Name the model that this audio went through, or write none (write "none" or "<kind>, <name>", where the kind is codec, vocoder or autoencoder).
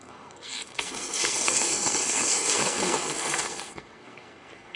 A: codec, SNAC